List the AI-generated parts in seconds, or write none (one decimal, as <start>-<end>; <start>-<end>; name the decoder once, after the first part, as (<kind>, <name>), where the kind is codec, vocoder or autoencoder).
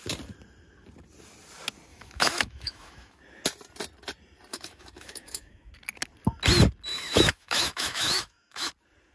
1.9-3.2 (autoencoder, DAC-VAE); 4.5-5.7; 6.9-8.7